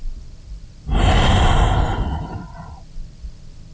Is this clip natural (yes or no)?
yes